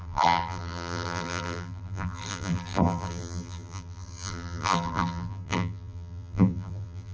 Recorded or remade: remade